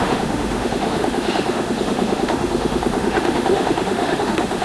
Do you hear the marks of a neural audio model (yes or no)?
yes